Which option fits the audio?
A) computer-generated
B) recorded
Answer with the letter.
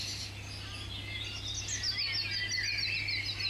B